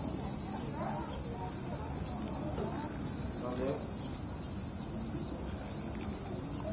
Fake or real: real